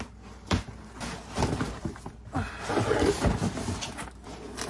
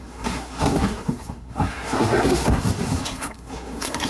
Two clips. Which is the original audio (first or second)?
first